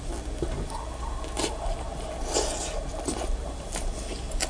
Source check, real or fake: real